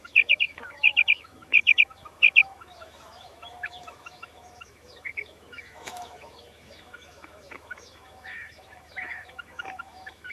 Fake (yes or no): yes